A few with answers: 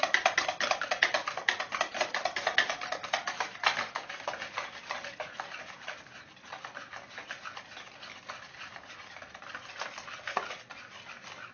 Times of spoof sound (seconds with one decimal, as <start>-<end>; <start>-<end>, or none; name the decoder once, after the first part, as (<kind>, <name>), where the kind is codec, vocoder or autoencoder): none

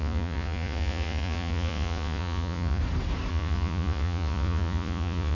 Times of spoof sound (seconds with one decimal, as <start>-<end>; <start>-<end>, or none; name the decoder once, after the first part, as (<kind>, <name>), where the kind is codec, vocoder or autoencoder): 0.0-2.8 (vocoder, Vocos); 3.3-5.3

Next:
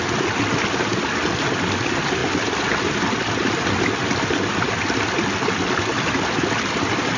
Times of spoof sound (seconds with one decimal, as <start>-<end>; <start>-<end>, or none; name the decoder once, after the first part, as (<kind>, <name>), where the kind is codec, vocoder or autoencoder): none

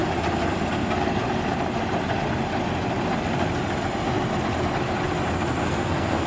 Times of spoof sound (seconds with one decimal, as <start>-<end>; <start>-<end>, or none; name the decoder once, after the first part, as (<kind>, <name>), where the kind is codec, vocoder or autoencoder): 5.6-6.3 (codec, SNAC)

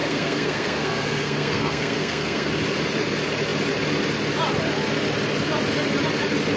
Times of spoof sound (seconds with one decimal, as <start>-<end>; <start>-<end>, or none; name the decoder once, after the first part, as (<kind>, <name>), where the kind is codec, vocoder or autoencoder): 0.0-2.5 (codec, SNAC)

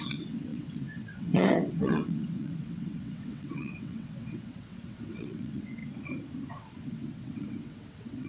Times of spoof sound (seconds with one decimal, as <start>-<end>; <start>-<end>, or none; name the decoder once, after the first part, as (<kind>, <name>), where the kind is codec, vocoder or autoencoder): 0.0-5.8 (vocoder, WaveNeXt); 6.5-8.3

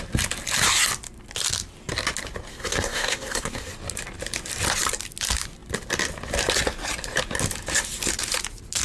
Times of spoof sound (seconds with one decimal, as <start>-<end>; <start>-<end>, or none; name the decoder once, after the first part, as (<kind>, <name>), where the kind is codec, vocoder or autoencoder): 2.5-3.7 (codec, SNAC)